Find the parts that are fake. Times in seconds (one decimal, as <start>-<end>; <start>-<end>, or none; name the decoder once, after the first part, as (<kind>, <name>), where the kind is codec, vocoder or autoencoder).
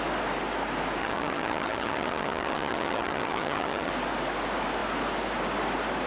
1.0-3.9 (vocoder, HiFi-GAN)